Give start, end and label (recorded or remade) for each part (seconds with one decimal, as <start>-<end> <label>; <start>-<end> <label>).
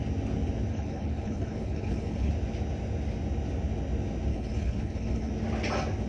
0.0-0.7 recorded; 0.7-2.3 remade; 2.3-4.3 recorded; 4.3-5.3 remade; 5.3-6.1 recorded